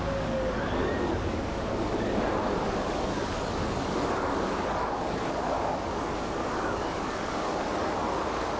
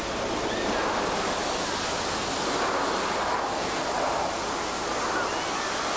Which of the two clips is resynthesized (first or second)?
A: first